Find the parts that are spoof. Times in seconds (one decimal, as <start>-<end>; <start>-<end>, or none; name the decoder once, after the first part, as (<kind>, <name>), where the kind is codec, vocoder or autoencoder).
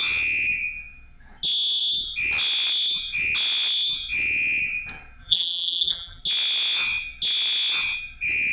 5.2-6.2 (vocoder, BigVGAN v2)